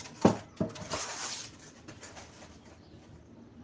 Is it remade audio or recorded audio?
recorded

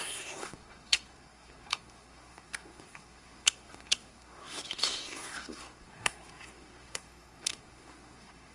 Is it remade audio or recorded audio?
remade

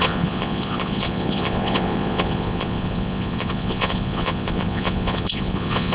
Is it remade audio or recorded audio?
remade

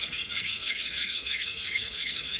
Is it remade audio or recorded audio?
remade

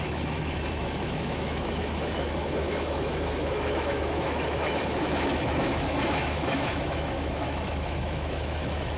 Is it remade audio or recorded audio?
remade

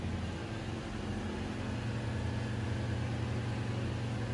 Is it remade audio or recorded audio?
recorded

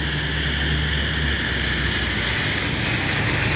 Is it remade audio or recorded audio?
recorded